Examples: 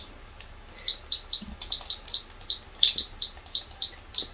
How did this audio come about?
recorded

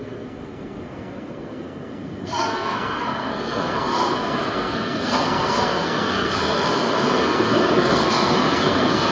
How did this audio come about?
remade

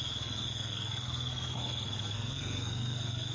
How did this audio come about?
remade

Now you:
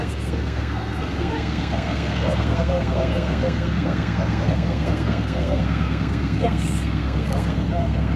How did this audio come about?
remade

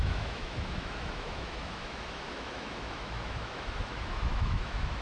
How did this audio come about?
remade